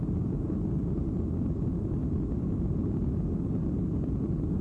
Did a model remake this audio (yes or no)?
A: no